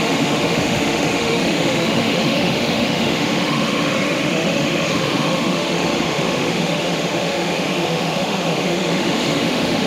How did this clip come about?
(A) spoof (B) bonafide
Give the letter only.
A